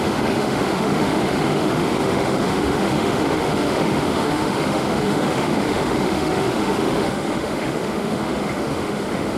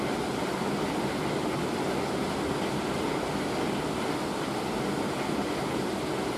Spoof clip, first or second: first